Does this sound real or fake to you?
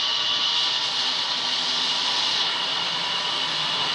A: real